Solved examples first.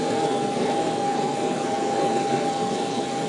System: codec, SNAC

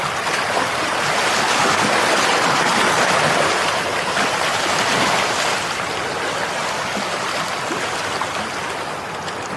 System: none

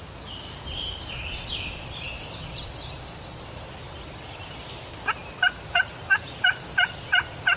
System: none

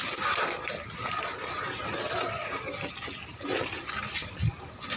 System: none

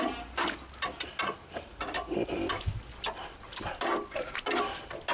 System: none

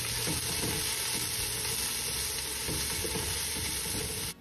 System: none